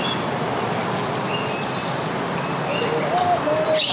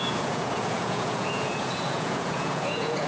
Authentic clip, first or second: first